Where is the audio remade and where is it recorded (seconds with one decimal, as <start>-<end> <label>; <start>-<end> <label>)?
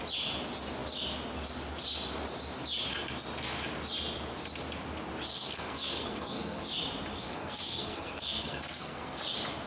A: 0.0-5.3 recorded; 5.3-6.6 remade; 6.6-7.2 recorded; 7.2-9.2 remade; 9.2-9.7 recorded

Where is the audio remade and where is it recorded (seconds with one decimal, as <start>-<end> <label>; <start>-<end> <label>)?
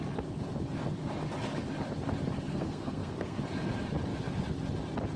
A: 0.0-2.5 recorded; 2.5-3.4 remade; 3.4-5.2 recorded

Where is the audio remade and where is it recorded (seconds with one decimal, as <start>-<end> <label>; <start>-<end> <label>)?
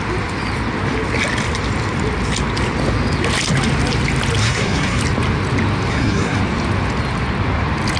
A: 0.0-4.4 recorded; 4.4-5.0 remade; 5.0-5.9 recorded; 5.9-6.4 remade; 6.4-8.0 recorded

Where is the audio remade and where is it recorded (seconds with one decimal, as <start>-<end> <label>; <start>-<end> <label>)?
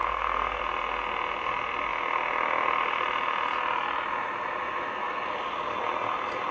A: 0.0-0.6 remade; 0.6-6.5 recorded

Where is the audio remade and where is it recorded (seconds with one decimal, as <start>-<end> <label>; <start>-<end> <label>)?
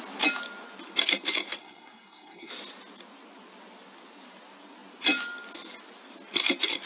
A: 0.0-1.6 recorded; 1.6-2.5 remade; 2.5-6.9 recorded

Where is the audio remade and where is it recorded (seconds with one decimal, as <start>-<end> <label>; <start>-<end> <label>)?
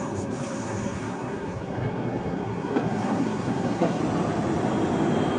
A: 0.0-4.0 remade; 4.0-5.4 recorded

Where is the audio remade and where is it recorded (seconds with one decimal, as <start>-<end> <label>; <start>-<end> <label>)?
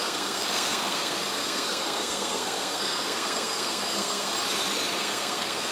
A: 0.0-4.3 remade; 4.3-5.0 recorded; 5.0-5.7 remade